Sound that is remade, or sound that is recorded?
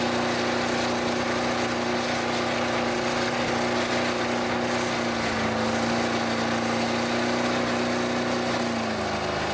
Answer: recorded